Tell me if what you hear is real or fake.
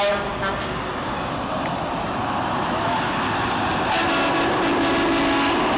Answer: real